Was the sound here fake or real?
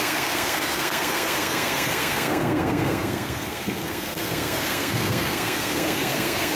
fake